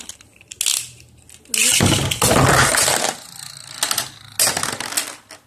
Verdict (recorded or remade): recorded